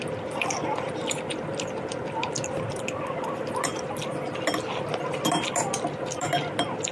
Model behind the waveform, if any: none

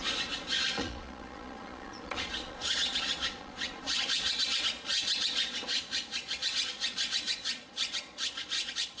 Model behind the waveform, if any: vocoder, Vocos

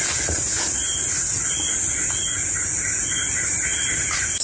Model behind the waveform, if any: none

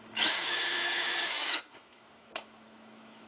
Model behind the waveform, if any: autoencoder, DAC-VAE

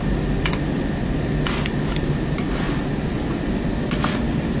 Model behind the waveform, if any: none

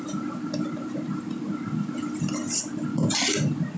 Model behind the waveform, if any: none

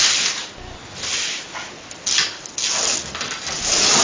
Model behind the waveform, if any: none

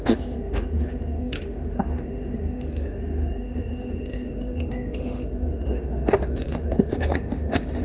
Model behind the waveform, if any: autoencoder, DAC-VAE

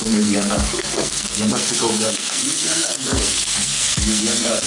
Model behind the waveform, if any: codec, SNAC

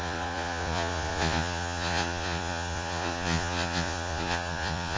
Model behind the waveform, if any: vocoder, Vocos